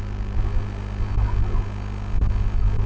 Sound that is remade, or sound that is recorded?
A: recorded